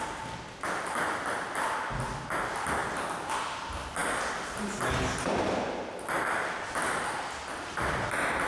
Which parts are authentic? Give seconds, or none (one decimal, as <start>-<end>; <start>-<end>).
0.0-2.8; 3.4-8.5